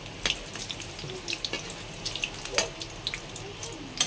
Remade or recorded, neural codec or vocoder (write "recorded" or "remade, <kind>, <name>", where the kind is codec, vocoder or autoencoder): recorded